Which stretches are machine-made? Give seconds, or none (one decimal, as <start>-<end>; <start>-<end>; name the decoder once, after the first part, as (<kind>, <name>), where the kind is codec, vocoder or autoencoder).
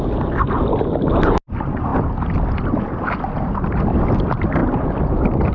none